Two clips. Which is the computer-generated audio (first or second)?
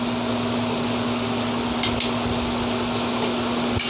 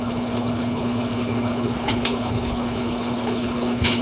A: second